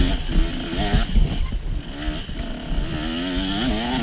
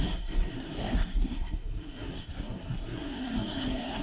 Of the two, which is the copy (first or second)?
second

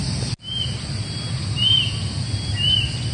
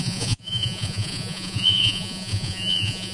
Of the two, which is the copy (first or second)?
second